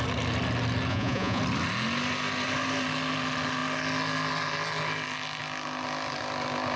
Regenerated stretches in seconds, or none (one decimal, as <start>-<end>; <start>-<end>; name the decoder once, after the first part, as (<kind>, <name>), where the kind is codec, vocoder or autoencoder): 0.9-1.4 (vocoder, Vocos)